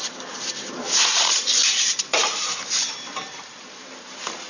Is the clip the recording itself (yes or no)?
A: no